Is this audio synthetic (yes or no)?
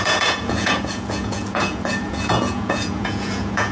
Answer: yes